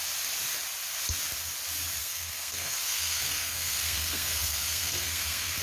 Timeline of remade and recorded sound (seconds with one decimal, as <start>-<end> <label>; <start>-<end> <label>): 0.0-2.0 recorded; 2.0-5.6 remade